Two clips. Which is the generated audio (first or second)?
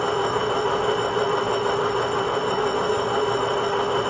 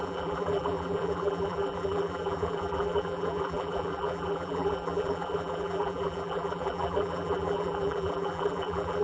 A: second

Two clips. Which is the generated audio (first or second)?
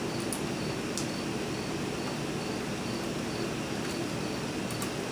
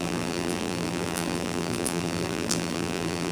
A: second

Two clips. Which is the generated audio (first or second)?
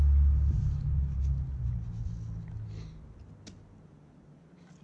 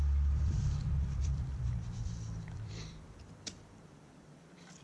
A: second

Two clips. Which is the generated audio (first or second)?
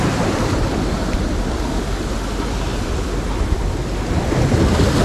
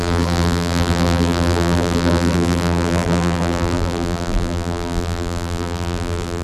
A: second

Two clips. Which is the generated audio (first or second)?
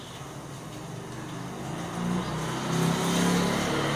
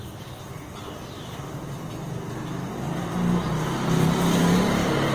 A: second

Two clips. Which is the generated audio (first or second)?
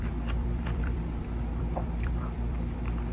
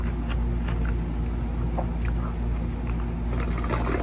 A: first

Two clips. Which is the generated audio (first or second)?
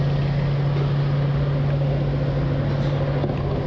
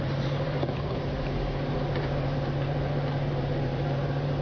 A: second